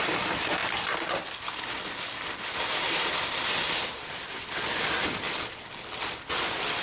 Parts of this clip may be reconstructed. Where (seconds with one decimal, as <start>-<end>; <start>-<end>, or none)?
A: none